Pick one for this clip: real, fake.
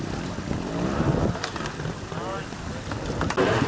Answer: real